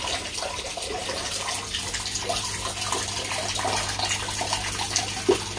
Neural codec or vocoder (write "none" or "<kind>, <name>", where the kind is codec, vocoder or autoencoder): none